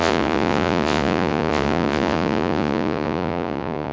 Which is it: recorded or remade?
remade